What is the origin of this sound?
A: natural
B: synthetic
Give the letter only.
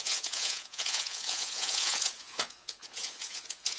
B